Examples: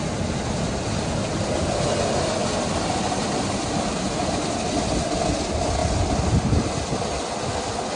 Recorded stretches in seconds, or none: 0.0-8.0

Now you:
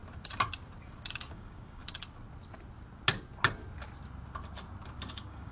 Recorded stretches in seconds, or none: 0.0-1.3; 1.8-5.1

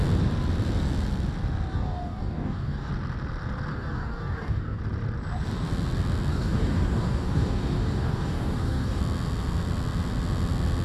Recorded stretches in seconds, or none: 0.0-1.7; 2.9-3.7; 4.8-6.3; 9.0-10.8

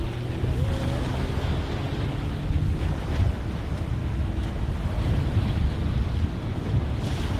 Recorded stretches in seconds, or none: 0.0-4.0; 4.7-7.4

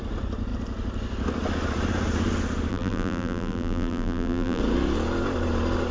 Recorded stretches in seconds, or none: 0.0-2.7; 4.6-5.9